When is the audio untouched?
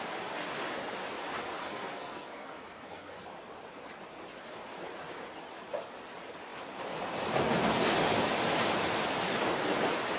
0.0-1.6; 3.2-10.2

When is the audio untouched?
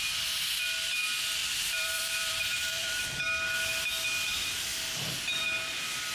0.0-1.4; 3.2-4.7; 5.4-6.1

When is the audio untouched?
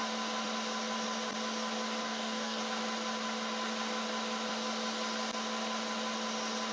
0.0-2.0; 2.6-6.7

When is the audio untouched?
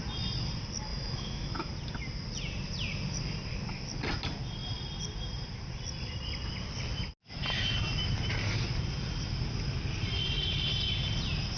0.0-0.9; 1.7-11.6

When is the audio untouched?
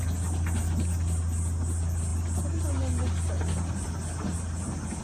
0.0-5.0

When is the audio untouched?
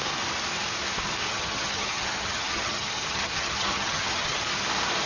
0.0-1.3; 4.4-5.1